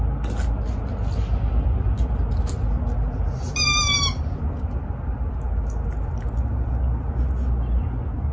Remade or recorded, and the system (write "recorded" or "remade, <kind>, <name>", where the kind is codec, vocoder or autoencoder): recorded